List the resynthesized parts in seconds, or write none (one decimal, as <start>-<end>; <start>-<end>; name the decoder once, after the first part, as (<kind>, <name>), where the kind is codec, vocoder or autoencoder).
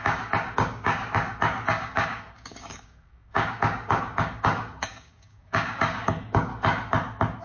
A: 0.0-6.5 (codec, DAC)